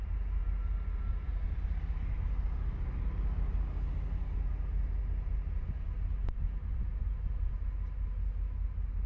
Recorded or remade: recorded